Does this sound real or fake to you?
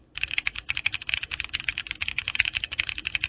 real